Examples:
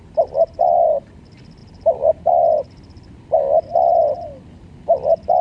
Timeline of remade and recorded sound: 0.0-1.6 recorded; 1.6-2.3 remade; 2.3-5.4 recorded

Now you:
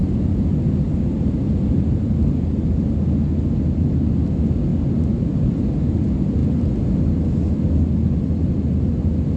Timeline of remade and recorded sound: 0.0-9.4 recorded